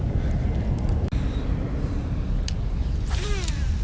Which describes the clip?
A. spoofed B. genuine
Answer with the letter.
B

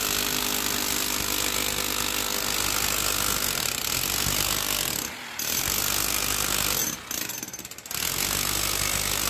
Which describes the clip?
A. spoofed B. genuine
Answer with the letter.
B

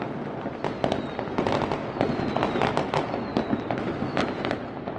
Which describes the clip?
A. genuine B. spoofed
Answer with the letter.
A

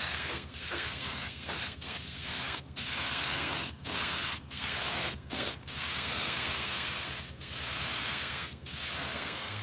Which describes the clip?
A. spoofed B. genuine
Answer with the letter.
A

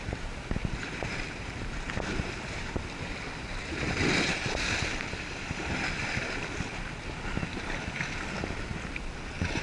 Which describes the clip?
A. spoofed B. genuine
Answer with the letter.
B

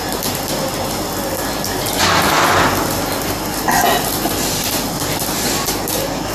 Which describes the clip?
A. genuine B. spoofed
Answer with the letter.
A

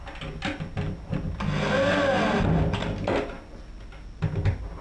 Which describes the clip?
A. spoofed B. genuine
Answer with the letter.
B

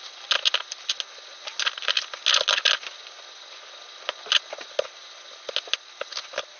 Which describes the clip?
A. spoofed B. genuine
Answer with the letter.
B